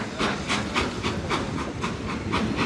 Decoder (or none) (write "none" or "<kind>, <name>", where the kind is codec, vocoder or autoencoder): none